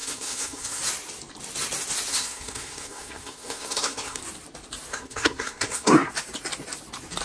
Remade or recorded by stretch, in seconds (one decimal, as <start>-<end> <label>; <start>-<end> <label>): 0.0-0.8 remade; 0.8-2.1 recorded; 2.1-4.2 remade; 4.2-4.9 recorded; 4.9-6.1 remade; 6.1-7.2 recorded

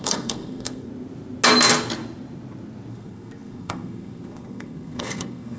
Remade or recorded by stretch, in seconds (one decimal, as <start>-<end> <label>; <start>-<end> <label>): 0.0-0.9 remade; 0.9-2.9 recorded; 2.9-5.6 remade

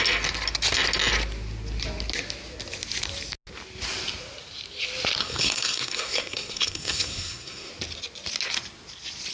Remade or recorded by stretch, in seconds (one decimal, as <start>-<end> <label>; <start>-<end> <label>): 0.0-5.2 recorded; 5.2-7.7 remade; 7.7-9.3 recorded

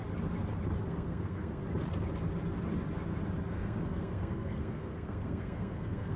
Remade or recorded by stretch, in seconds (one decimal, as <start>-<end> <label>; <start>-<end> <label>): 0.0-0.8 recorded; 0.8-1.6 remade; 1.6-3.5 recorded; 3.5-6.2 remade

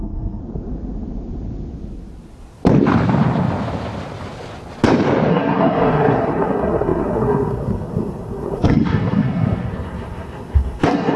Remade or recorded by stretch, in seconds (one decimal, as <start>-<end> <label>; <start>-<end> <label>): 0.0-0.4 remade; 0.4-5.3 recorded; 5.3-11.2 remade

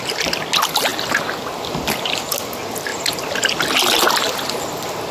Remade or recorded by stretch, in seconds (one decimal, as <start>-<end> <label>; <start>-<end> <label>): 0.0-5.1 recorded

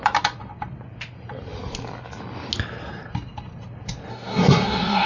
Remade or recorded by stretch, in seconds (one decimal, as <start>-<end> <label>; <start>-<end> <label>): 0.0-4.1 recorded; 4.1-5.1 remade

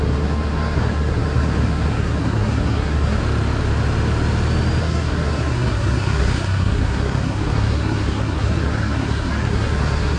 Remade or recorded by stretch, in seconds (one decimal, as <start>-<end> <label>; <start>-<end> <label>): 0.0-3.2 remade; 3.2-4.8 recorded; 4.8-10.2 remade